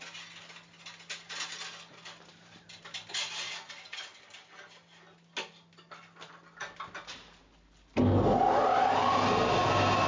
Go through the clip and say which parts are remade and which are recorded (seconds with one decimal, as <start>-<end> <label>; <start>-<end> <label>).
0.0-10.1 recorded